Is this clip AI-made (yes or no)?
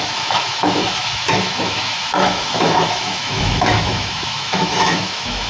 yes